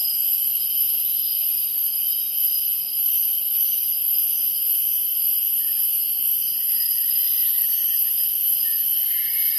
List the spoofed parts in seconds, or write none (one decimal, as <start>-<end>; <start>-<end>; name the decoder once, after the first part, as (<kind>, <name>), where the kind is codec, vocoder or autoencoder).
1.0-9.6 (vocoder, BigVGAN v2)